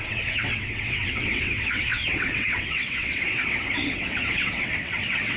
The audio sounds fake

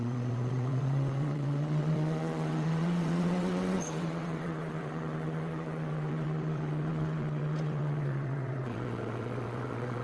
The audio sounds fake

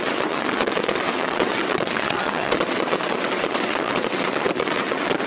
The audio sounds fake